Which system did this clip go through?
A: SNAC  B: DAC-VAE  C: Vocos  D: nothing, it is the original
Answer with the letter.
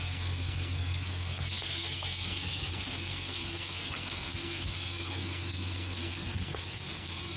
A